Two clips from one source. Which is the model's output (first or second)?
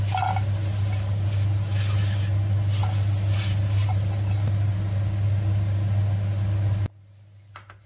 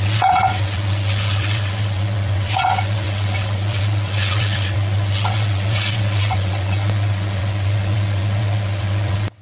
second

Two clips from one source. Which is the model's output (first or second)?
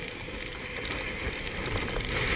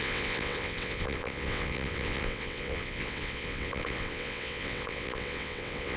second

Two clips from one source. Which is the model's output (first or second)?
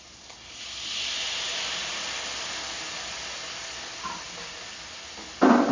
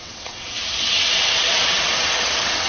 second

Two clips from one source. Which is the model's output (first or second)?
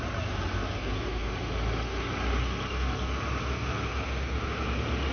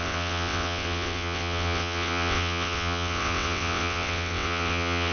second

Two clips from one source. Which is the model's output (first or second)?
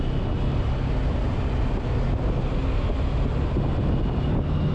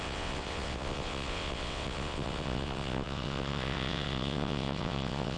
second